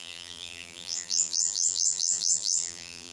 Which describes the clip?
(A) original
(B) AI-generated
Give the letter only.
B